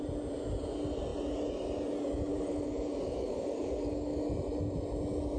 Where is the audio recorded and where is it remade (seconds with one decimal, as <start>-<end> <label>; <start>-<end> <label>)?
0.0-2.3 recorded; 2.3-4.2 remade; 4.2-5.4 recorded